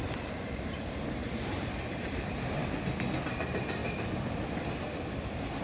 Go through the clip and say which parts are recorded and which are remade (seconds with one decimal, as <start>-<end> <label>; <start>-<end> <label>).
0.0-2.6 remade; 2.6-3.2 recorded; 3.2-3.8 remade; 3.8-4.8 recorded; 4.8-5.6 remade